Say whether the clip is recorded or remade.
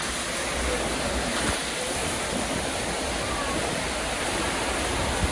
recorded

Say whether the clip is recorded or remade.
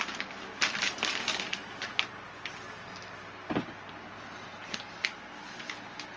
recorded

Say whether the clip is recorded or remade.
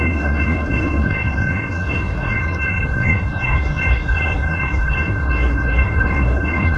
remade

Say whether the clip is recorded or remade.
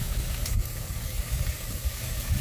remade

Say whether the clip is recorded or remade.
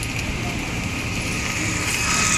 recorded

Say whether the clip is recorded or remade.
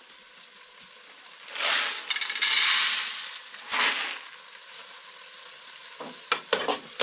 recorded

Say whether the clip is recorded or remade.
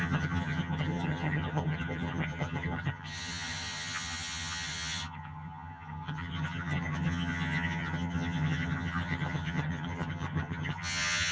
remade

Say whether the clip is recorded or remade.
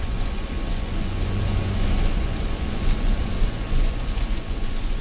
remade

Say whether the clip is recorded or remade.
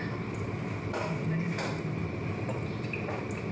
recorded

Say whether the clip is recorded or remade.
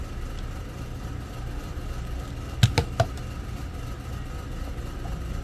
recorded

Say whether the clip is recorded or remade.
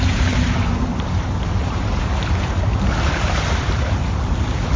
remade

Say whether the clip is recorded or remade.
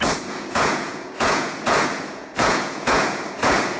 remade